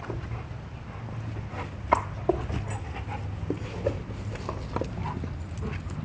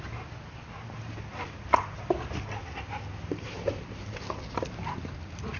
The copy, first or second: second